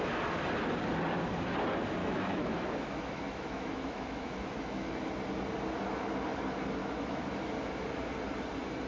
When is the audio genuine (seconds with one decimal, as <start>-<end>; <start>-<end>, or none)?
0.0-2.0; 5.1-6.8; 7.5-8.9